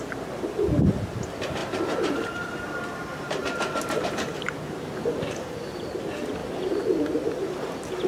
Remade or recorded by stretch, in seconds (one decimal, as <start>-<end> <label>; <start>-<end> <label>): 0.0-1.6 recorded; 1.6-6.0 remade; 6.0-8.1 recorded